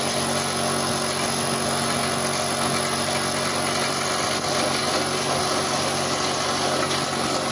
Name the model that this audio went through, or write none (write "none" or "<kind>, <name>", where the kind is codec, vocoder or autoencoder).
none